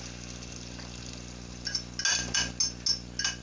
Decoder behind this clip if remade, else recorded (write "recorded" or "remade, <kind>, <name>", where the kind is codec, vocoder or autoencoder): recorded